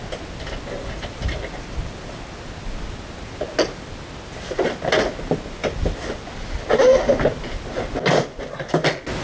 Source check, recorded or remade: recorded